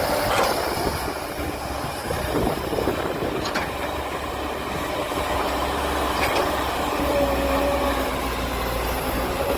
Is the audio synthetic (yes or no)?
yes